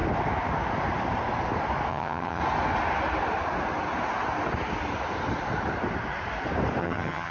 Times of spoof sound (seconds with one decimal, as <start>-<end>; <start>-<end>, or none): 1.9-2.4; 6.8-7.3